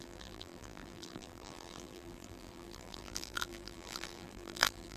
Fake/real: fake